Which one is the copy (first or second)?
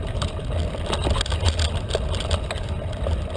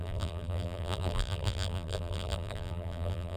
second